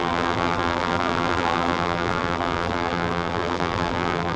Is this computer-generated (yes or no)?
yes